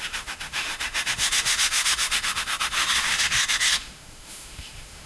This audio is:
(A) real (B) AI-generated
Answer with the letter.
B